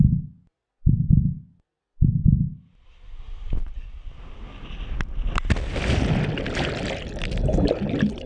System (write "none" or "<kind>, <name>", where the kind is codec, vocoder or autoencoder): none